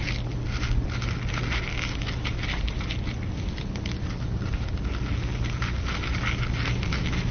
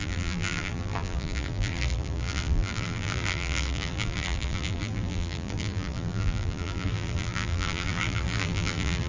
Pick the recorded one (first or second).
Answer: first